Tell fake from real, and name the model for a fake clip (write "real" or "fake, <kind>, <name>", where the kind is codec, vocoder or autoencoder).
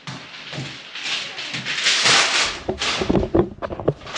real